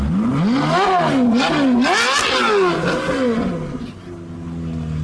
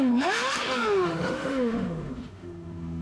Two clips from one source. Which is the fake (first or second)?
second